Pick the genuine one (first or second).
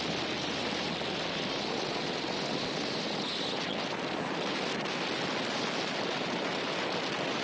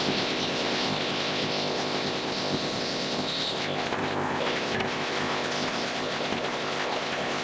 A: first